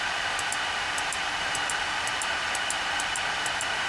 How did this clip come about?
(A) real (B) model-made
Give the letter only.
A